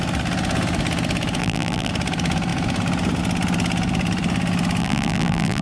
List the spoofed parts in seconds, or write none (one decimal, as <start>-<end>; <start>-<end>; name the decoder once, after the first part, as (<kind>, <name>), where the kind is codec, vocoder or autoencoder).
1.4-1.9 (vocoder, BigVGAN v2); 4.8-5.6